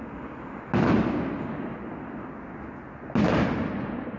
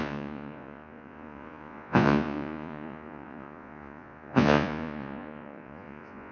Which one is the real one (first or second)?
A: first